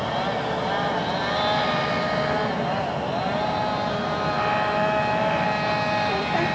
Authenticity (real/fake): real